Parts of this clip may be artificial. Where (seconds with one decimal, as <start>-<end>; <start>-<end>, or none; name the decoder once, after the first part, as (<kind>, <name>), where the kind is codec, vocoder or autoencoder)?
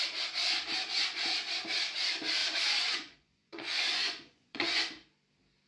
2.4-4.8 (vocoder, Vocos)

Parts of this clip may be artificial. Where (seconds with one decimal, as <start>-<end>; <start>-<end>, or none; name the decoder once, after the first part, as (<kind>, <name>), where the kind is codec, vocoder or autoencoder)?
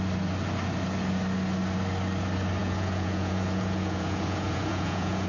2.6-5.3 (vocoder, Vocos)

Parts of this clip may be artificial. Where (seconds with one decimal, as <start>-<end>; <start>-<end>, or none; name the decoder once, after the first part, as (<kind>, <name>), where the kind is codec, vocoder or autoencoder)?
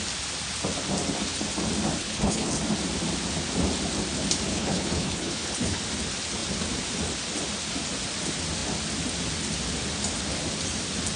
2.0-2.6 (codec, HILCodec); 4.5-5.8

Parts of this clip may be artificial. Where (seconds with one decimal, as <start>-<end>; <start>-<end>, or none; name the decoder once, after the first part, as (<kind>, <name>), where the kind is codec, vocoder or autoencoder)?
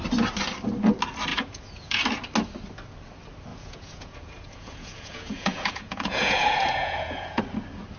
1.3-2.0 (vocoder, Vocos); 3.5-7.4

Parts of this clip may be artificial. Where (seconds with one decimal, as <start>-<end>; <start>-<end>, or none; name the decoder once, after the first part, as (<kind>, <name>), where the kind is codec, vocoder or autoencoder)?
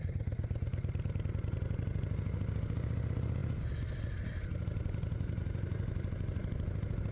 none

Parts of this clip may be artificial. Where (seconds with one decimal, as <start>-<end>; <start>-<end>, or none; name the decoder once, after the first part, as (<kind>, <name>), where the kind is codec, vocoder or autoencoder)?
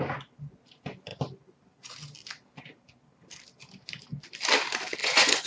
5.0-5.5 (vocoder, Vocos)